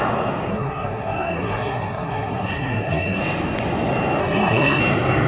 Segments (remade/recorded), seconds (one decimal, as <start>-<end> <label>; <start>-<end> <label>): 0.0-0.5 recorded; 0.5-3.2 remade; 3.2-4.2 recorded; 4.2-4.8 remade; 4.8-5.3 recorded